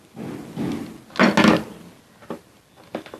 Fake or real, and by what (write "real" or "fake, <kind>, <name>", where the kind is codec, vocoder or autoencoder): real